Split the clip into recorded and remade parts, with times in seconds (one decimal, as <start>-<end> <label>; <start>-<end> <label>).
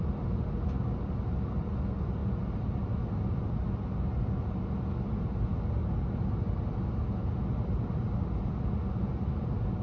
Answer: 0.0-9.8 recorded